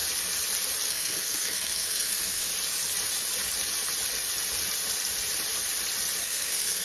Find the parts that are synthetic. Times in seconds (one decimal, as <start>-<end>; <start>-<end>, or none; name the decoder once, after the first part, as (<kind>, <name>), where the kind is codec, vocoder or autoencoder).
0.9-2.5 (codec, SNAC); 6.2-6.8